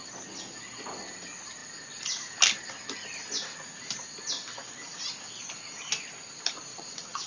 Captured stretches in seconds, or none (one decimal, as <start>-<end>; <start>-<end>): 0.0-4.5; 5.0-6.7